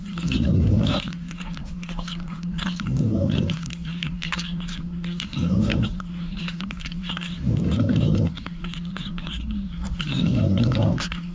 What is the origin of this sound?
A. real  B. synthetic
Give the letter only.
B